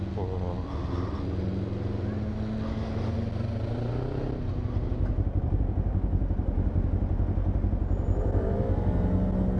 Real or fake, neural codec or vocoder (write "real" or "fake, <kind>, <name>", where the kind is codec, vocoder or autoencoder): real